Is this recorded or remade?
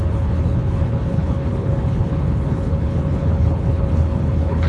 remade